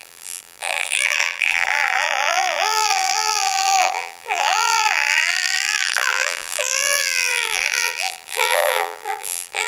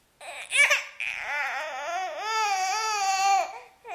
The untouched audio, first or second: second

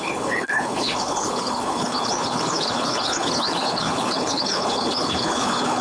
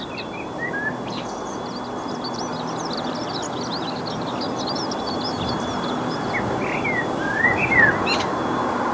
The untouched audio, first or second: second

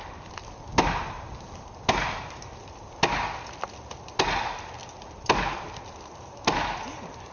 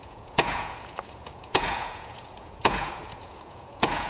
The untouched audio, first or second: first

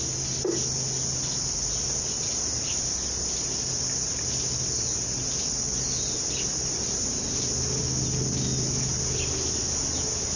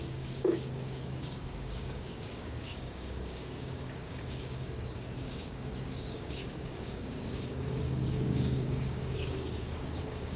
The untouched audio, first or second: first